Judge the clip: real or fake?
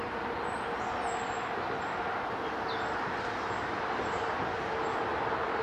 real